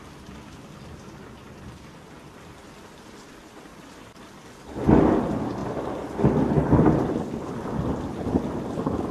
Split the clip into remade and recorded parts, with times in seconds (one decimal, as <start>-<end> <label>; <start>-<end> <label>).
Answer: 0.0-3.7 recorded; 3.7-4.6 remade; 4.6-5.6 recorded; 5.6-6.4 remade; 6.4-9.1 recorded